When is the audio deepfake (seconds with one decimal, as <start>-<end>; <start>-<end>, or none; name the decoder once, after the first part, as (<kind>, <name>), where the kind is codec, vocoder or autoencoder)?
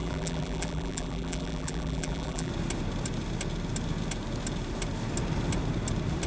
0.0-2.5 (vocoder, BigVGAN v2)